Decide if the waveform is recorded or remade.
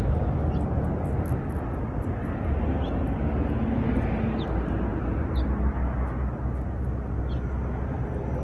recorded